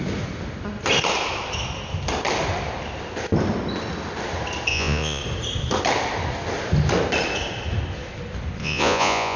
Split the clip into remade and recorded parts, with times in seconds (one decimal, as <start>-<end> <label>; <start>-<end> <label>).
0.0-4.7 recorded; 4.7-5.2 remade; 5.2-8.6 recorded; 8.6-9.4 remade

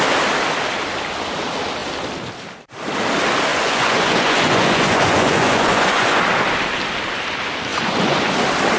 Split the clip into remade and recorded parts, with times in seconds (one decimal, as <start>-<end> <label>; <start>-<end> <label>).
0.0-3.5 recorded; 3.5-6.2 remade; 6.2-7.7 recorded; 7.7-8.3 remade; 8.3-8.8 recorded

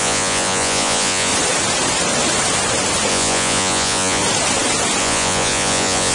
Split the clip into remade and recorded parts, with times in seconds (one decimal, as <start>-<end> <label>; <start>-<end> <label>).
0.0-1.3 remade; 1.3-3.1 recorded; 3.1-4.2 remade; 4.2-5.0 recorded; 5.0-6.1 remade

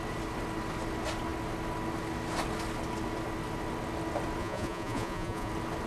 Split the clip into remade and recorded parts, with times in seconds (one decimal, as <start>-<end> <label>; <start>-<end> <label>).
0.0-4.4 recorded; 4.4-5.5 remade; 5.5-5.9 recorded

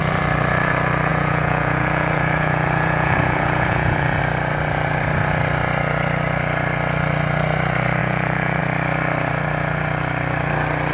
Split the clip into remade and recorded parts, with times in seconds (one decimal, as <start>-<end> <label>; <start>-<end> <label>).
0.0-1.1 recorded; 1.1-4.2 remade; 4.2-8.0 recorded; 8.0-8.6 remade; 8.6-10.9 recorded